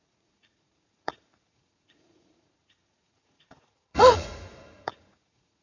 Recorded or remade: remade